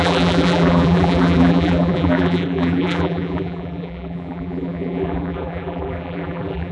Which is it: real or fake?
fake